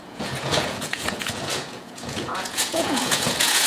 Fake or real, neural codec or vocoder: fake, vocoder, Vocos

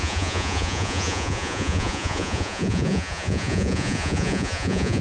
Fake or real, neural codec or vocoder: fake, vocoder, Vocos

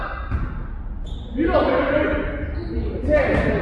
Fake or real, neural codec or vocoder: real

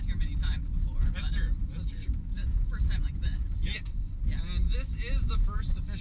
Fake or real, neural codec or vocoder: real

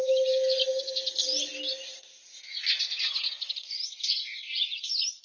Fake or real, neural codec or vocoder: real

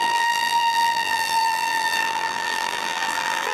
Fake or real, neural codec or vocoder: fake, vocoder, BigVGAN v2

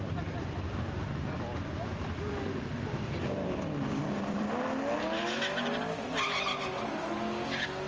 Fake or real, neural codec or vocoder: fake, vocoder, BigVGAN v2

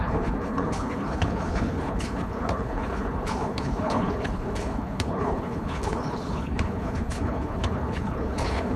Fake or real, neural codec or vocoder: fake, codec, HILCodec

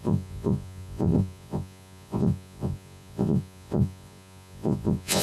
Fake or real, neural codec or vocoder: fake, vocoder, Vocos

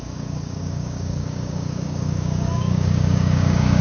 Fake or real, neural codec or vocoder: fake, codec, DAC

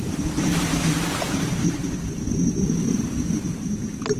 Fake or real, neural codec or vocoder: fake, vocoder, BigVGAN v2